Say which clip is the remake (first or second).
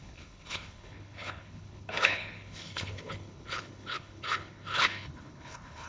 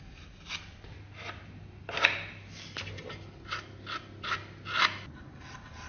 first